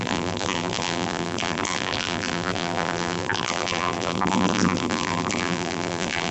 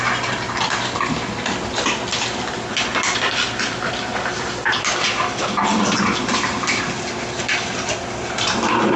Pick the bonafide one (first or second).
second